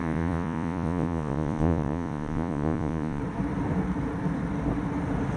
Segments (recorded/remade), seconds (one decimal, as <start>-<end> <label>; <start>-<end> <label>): 0.0-3.2 remade; 3.2-5.4 recorded